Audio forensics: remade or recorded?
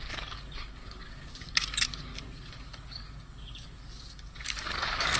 remade